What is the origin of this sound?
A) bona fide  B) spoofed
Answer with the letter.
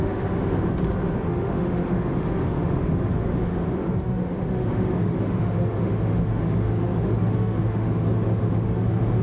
B